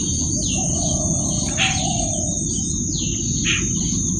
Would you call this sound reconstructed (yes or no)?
no